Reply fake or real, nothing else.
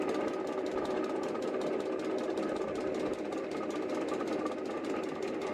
real